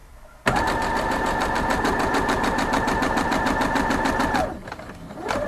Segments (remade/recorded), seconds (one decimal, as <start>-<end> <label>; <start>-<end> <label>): 0.0-0.6 recorded; 0.6-5.5 remade